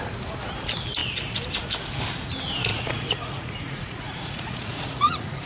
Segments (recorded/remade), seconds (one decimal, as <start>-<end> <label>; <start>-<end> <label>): 0.0-2.7 recorded; 2.7-5.5 remade